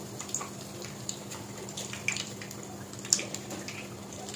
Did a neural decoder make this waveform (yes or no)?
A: yes